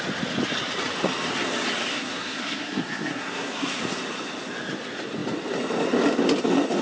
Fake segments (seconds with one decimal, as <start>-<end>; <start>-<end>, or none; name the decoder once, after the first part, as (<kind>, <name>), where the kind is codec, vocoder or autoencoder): 1.9-3.8 (codec, SNAC)